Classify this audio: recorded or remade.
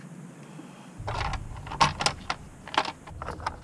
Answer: recorded